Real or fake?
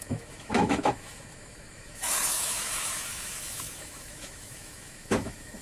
fake